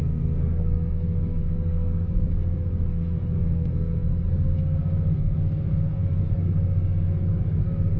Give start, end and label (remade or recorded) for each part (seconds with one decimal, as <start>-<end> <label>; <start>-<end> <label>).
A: 0.0-8.0 remade